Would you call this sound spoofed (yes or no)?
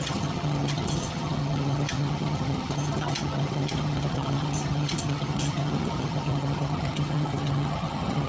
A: yes